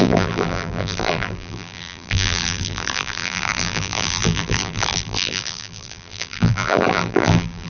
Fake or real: fake